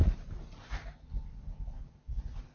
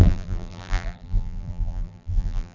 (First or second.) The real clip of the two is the first